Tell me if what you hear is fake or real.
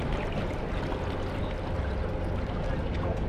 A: real